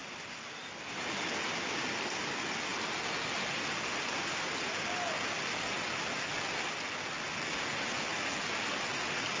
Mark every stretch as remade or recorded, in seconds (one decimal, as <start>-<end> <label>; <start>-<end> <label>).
0.0-9.4 recorded